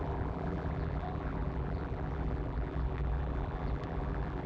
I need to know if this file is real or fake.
fake